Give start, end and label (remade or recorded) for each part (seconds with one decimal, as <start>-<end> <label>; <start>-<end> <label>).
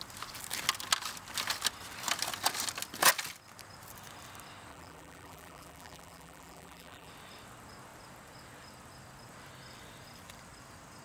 0.0-4.7 recorded; 4.7-7.1 remade; 7.1-11.0 recorded